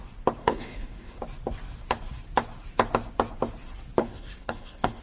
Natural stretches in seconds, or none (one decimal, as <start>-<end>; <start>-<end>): 0.0-0.4; 1.2-4.0